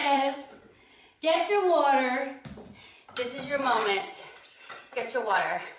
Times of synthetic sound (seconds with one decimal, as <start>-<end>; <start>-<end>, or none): 0.0-1.5; 3.3-5.8